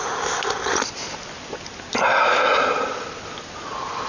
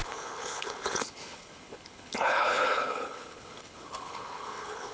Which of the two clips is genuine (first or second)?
first